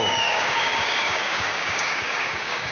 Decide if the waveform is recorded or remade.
remade